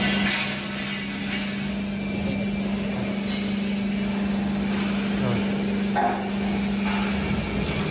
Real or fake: real